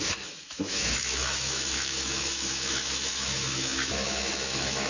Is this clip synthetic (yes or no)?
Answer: yes